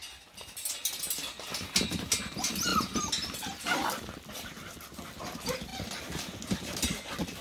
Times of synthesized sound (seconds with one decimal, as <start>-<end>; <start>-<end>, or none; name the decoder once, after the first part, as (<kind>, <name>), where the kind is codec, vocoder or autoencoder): none